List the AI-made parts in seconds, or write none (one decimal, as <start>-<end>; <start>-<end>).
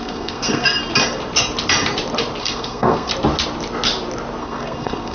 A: 0.0-0.8; 2.4-3.1; 4.4-5.1